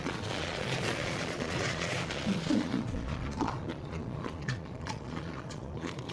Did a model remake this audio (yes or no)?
yes